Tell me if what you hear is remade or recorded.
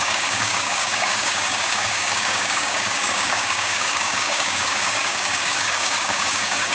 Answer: remade